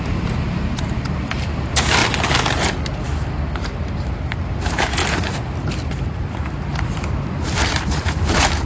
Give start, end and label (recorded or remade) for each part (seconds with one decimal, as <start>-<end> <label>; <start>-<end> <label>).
0.0-2.0 remade; 2.0-3.6 recorded; 3.6-8.7 remade